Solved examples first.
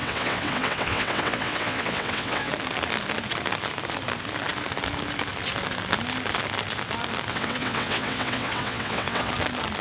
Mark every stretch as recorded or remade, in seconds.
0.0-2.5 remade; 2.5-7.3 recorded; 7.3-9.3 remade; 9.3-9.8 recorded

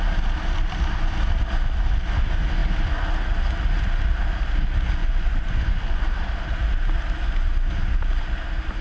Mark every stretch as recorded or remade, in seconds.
0.0-5.0 recorded; 5.0-6.0 remade; 6.0-8.8 recorded

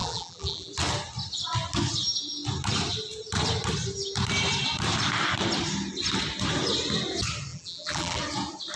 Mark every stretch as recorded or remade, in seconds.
0.0-0.7 remade; 0.7-7.5 recorded; 7.5-8.2 remade; 8.2-8.8 recorded

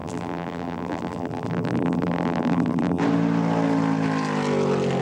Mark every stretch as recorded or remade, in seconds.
0.0-3.0 remade; 3.0-5.0 recorded

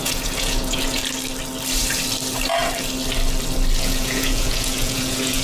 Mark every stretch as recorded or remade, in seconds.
0.0-1.0 remade; 1.0-3.8 recorded; 3.8-5.4 remade

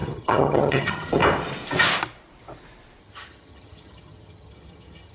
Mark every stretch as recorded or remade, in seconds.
0.0-1.2 remade; 1.2-3.0 recorded; 3.0-5.1 remade

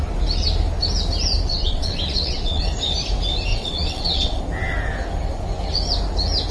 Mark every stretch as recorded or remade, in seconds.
0.0-1.5 recorded; 1.5-2.6 remade; 2.6-3.5 recorded; 3.5-4.4 remade; 4.4-6.5 recorded